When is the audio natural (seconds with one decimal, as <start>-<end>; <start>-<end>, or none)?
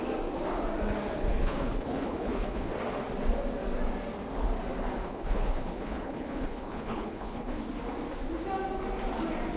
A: 0.0-1.3; 2.7-5.0; 7.6-9.6